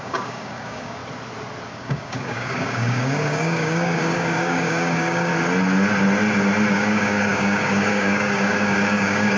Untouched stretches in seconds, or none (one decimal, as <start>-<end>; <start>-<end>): 1.0-1.7; 5.3-6.7